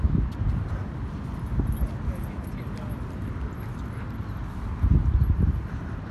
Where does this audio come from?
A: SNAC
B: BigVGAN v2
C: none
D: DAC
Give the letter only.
C